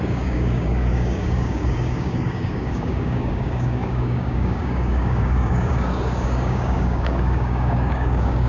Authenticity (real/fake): fake